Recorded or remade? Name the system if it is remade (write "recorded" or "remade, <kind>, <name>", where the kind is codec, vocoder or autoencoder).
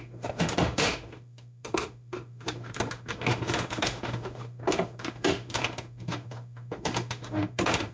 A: remade, autoencoder, DAC-VAE